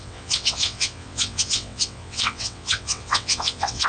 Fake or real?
fake